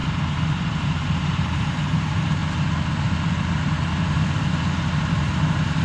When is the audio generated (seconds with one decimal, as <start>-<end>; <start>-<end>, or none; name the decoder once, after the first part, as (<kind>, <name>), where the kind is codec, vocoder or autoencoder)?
0.7-2.4 (vocoder, BigVGAN v2); 5.0-5.8